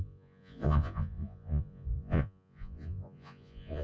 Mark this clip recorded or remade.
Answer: remade